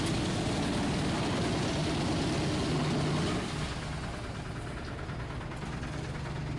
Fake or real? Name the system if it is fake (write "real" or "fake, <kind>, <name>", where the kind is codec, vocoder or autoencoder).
real